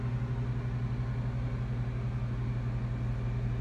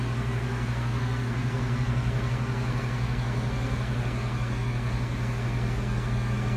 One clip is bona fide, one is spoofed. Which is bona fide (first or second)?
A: first